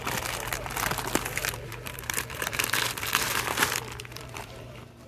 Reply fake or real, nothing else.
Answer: fake